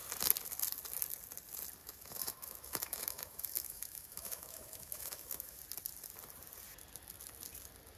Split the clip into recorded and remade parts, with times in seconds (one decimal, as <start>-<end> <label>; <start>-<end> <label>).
0.0-1.8 recorded; 1.8-5.6 remade; 5.6-8.0 recorded